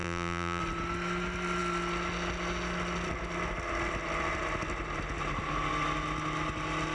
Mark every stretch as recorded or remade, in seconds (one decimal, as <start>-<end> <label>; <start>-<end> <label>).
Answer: 0.0-0.6 remade; 0.6-6.9 recorded